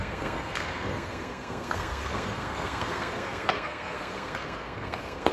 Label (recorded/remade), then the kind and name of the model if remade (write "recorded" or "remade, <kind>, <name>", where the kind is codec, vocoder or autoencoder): remade, codec, SNAC